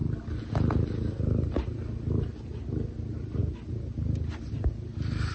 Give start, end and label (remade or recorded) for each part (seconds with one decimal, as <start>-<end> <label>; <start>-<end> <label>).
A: 0.0-5.3 recorded